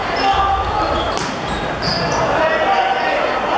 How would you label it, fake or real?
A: real